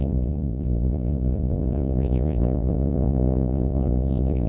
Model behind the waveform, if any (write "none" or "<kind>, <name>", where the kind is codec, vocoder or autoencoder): vocoder, Vocos